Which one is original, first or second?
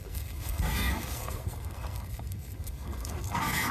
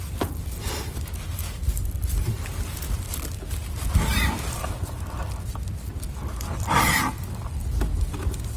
second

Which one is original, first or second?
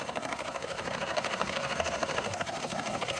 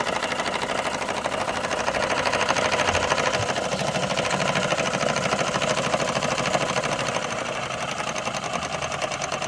second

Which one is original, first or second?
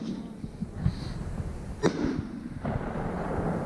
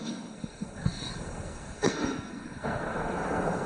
first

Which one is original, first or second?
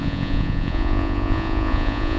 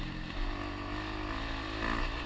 second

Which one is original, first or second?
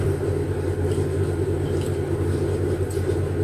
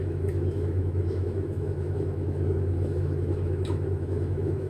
first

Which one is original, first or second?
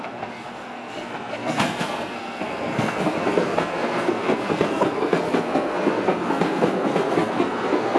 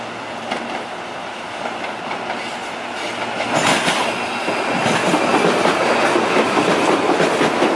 second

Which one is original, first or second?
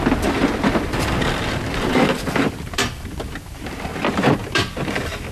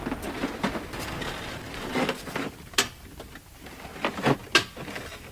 second